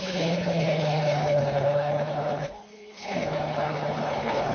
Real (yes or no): no